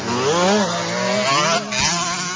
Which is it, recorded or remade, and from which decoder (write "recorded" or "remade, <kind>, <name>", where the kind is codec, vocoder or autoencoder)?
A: recorded